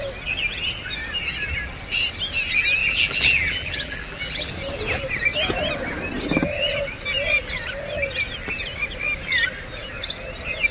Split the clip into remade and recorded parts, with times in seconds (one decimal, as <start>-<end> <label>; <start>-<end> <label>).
0.0-2.8 recorded; 2.8-4.5 remade; 4.5-10.7 recorded